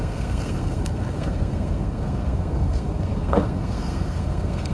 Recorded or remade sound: remade